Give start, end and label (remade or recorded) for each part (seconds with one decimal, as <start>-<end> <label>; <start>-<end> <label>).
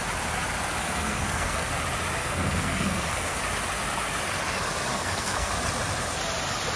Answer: 0.0-0.8 recorded; 0.8-1.7 remade; 1.7-2.2 recorded; 2.2-3.4 remade; 3.4-4.9 recorded; 4.9-5.5 remade; 5.5-6.8 recorded